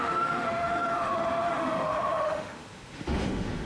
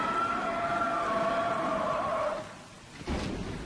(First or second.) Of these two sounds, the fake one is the first